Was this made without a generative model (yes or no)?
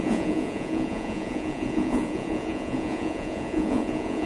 no